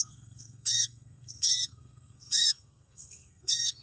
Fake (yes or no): yes